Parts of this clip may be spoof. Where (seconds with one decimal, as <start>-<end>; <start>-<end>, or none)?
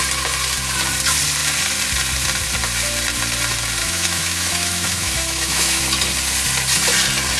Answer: 3.8-5.8